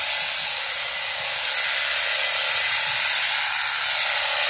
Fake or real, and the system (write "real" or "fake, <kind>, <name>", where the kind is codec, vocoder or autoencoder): real